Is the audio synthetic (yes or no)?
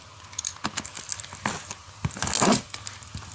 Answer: no